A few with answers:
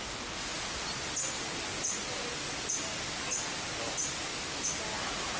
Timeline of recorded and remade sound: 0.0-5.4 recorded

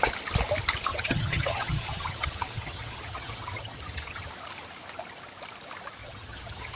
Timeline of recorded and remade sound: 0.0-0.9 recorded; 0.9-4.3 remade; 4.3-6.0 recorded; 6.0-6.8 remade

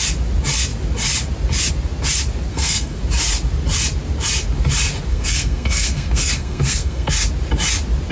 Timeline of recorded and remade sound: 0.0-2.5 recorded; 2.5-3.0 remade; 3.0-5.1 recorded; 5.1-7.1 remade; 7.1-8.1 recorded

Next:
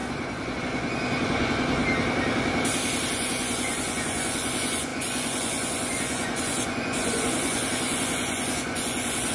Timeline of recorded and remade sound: 0.0-1.8 remade; 1.8-3.1 recorded; 3.1-9.3 remade

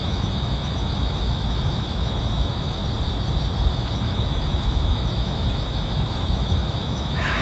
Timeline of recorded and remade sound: 0.0-2.8 remade; 2.8-3.7 recorded; 3.7-7.4 remade

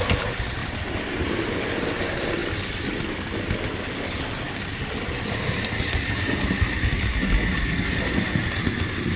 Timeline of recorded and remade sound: 0.0-0.6 recorded; 0.6-1.6 remade; 1.6-9.2 recorded

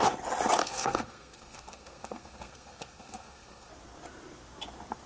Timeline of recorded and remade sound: 0.0-0.6 recorded; 0.6-3.7 remade; 3.7-5.1 recorded

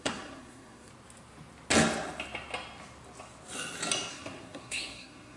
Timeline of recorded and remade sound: 0.0-0.9 remade; 0.9-4.1 recorded; 4.1-5.4 remade